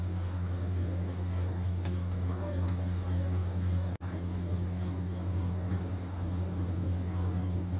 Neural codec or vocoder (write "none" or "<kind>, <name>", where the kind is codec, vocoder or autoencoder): codec, DAC